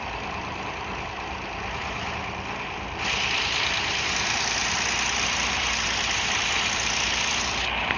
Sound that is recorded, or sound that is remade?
recorded